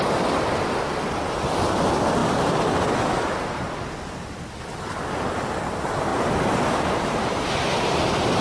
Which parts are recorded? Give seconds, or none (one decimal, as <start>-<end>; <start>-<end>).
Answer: 0.0-2.2; 2.8-6.1; 7.5-8.4